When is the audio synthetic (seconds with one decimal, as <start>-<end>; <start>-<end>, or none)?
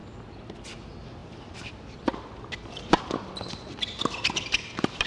none